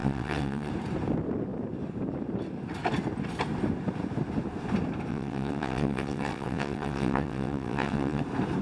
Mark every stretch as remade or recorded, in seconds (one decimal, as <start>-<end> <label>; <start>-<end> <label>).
0.0-0.7 remade; 0.7-5.1 recorded; 5.1-8.2 remade; 8.2-8.6 recorded